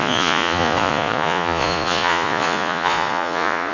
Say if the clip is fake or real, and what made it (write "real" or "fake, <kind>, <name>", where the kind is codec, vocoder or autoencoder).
fake, vocoder, Vocos